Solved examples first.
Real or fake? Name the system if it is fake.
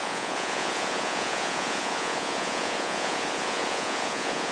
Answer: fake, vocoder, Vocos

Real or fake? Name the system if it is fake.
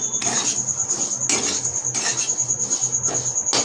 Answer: real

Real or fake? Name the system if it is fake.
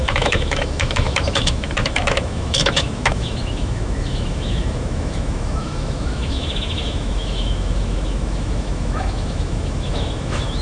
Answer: fake, autoencoder, DAC-VAE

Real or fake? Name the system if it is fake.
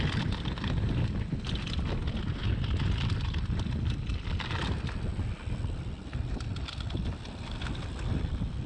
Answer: real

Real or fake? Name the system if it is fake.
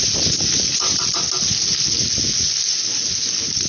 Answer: real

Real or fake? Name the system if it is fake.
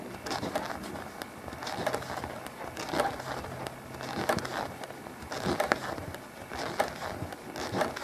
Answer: real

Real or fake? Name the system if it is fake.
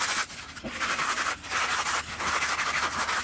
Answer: real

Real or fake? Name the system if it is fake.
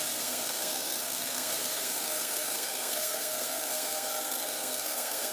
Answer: fake, codec, SNAC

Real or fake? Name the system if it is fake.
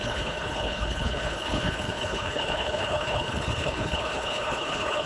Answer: fake, codec, HILCodec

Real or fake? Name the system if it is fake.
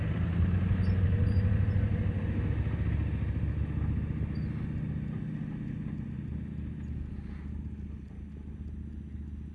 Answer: real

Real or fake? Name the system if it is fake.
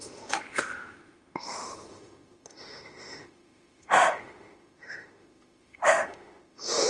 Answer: fake, autoencoder, DAC-VAE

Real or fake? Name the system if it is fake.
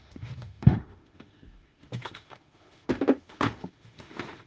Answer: fake, autoencoder, DAC-VAE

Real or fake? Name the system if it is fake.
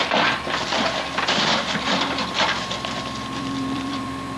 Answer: fake, vocoder, BigVGAN v2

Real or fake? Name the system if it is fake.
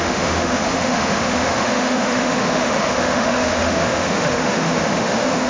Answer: fake, autoencoder, DAC-VAE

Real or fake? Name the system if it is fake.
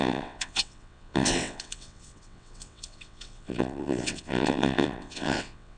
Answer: fake, vocoder, WaveNeXt